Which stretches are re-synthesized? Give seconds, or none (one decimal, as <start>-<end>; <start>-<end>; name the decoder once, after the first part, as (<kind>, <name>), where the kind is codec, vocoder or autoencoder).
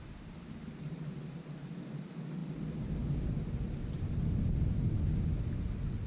none